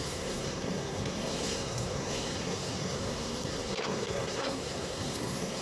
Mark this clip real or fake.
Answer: fake